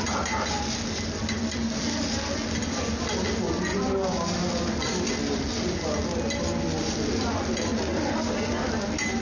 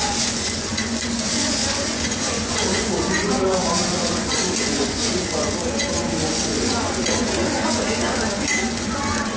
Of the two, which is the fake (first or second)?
second